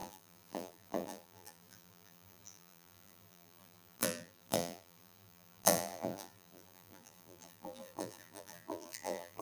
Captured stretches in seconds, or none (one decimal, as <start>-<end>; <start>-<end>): none